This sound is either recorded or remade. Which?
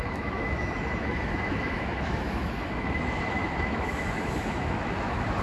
remade